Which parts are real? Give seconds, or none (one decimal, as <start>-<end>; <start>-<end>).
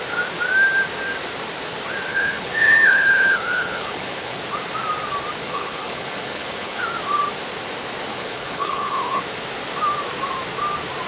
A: 0.0-2.1; 4.4-5.4; 6.8-8.1; 9.2-11.1